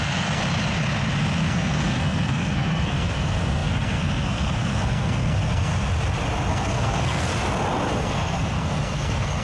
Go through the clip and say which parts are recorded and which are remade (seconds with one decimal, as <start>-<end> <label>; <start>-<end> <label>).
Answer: 0.0-0.4 remade; 0.4-1.4 recorded; 1.4-5.7 remade; 5.7-6.5 recorded; 6.5-7.3 remade; 7.3-7.9 recorded; 7.9-9.4 remade